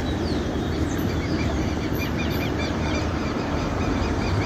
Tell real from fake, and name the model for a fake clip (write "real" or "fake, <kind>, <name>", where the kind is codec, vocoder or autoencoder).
fake, vocoder, BigVGAN v2